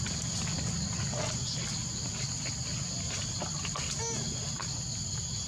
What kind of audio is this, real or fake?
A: real